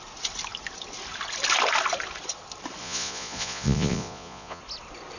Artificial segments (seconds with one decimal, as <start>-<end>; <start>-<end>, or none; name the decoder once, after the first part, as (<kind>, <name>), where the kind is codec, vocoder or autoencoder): 2.8-4.6 (vocoder, Vocos)